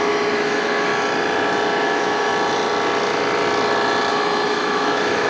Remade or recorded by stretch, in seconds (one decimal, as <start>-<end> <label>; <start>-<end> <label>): 0.0-0.9 remade; 0.9-1.8 recorded; 1.8-2.3 remade; 2.3-4.1 recorded; 4.1-5.3 remade